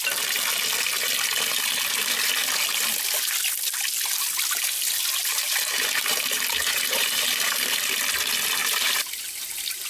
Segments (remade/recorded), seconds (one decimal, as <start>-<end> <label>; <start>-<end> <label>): 0.0-5.3 recorded; 5.3-8.0 remade; 8.0-8.6 recorded; 8.6-9.1 remade; 9.1-9.9 recorded